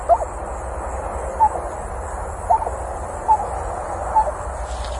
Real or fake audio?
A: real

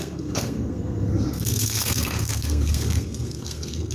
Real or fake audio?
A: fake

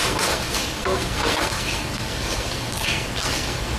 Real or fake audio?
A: fake